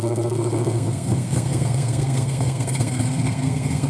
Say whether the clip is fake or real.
fake